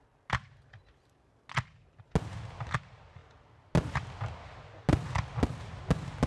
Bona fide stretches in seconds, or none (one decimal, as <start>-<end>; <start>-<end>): 0.0-6.3